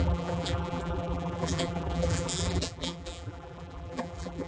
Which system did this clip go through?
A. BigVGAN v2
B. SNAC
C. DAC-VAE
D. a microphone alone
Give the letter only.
A